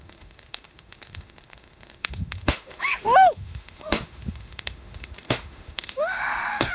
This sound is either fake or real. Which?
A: fake